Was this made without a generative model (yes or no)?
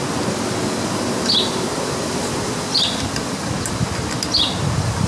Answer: yes